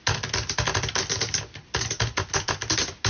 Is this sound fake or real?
real